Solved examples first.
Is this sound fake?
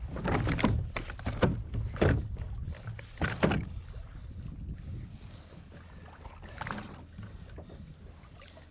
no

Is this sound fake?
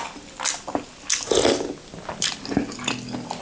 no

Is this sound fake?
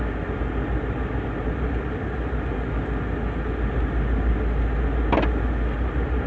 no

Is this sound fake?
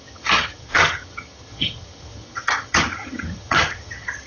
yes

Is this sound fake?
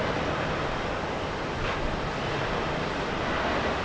no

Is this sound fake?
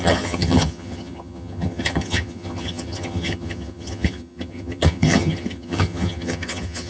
yes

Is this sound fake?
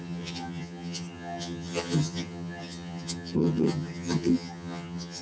yes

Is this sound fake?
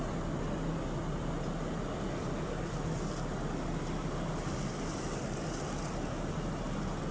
no